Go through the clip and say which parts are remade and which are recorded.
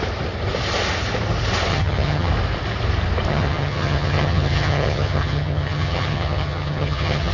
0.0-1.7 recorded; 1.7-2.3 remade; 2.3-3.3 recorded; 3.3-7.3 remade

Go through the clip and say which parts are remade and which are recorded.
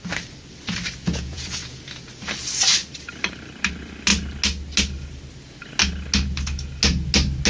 0.0-1.0 recorded; 1.0-1.9 remade; 1.9-7.5 recorded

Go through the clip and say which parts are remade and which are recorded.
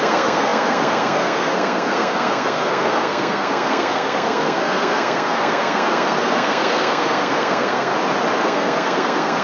0.0-7.9 remade; 7.9-8.4 recorded; 8.4-9.4 remade